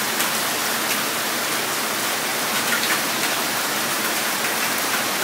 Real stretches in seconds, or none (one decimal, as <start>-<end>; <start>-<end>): 0.0-2.3; 4.0-5.2